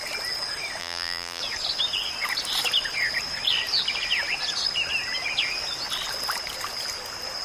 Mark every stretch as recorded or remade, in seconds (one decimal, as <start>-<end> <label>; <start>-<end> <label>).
0.0-0.8 recorded; 0.8-1.4 remade; 1.4-7.4 recorded